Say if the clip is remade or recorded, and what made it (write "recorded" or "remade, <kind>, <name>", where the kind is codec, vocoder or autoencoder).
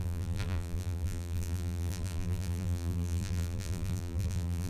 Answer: remade, vocoder, BigVGAN v2